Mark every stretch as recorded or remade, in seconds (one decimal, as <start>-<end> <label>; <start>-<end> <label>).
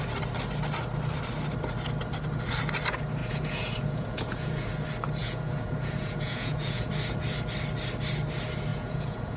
0.0-3.2 recorded; 3.2-4.7 remade; 4.7-5.2 recorded; 5.2-6.9 remade; 6.9-8.7 recorded; 8.7-9.4 remade